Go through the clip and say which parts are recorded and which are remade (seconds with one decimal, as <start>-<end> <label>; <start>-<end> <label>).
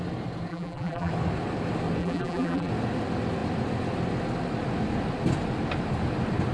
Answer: 0.0-0.5 recorded; 0.5-1.1 remade; 1.1-2.0 recorded; 2.0-2.7 remade; 2.7-6.5 recorded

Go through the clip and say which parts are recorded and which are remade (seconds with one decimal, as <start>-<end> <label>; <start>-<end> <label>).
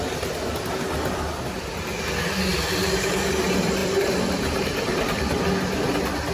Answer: 0.0-2.5 recorded; 2.5-3.3 remade; 3.3-3.8 recorded; 3.8-5.4 remade; 5.4-6.3 recorded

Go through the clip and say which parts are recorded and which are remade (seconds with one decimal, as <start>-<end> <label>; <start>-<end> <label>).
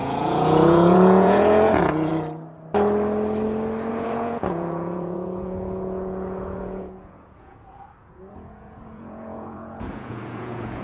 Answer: 0.0-2.1 remade; 2.1-3.9 recorded; 3.9-10.8 remade